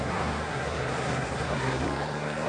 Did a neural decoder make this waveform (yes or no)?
yes